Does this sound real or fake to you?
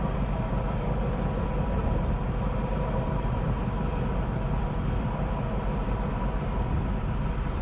real